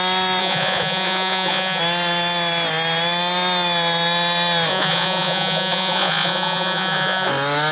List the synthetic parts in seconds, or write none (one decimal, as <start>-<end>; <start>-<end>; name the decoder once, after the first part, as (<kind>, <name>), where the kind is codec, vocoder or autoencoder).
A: 0.4-1.8 (vocoder, Vocos); 4.7-7.3